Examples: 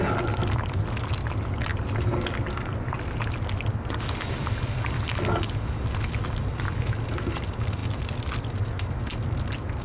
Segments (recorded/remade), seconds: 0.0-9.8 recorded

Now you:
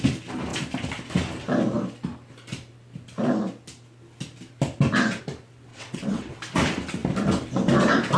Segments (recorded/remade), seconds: 0.0-5.7 recorded; 5.7-6.3 remade; 6.3-8.2 recorded

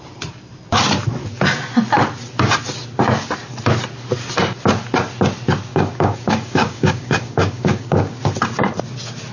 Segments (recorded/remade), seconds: 0.0-5.7 recorded; 5.7-8.2 remade; 8.2-9.3 recorded

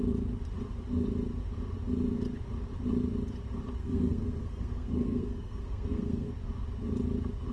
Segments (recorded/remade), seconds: 0.0-3.8 recorded; 3.8-6.3 remade; 6.3-7.5 recorded

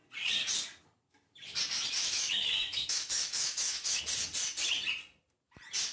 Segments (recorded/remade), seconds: 0.0-2.0 recorded; 2.0-4.0 remade; 4.0-5.9 recorded

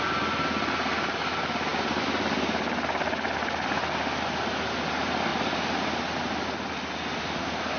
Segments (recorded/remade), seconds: 0.0-7.8 recorded

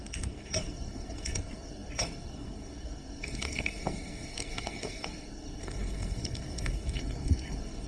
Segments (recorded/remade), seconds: 0.0-7.9 remade

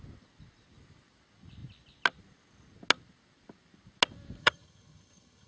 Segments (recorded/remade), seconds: 0.0-4.4 recorded; 4.4-5.5 remade